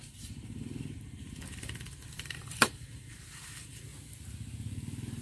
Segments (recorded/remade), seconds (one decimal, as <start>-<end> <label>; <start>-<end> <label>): 0.0-3.9 remade; 3.9-5.2 recorded